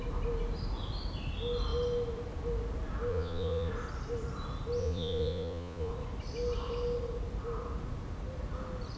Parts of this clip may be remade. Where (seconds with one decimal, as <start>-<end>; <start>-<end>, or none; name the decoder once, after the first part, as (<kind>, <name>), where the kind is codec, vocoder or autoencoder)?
3.1-3.7 (vocoder, Vocos); 4.8-5.9